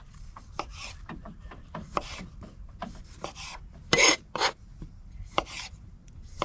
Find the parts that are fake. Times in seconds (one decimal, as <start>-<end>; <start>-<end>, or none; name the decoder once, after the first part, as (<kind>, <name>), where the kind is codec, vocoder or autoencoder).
0.0-0.7 (vocoder, BigVGAN v2); 3.7-6.4